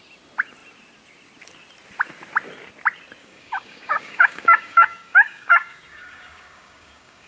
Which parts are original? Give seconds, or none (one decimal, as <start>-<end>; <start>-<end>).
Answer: 0.0-3.2